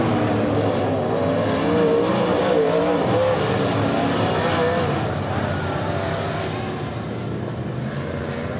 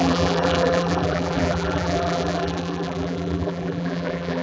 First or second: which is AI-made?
second